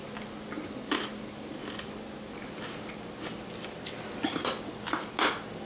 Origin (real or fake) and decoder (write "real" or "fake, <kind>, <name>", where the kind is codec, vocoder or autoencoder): real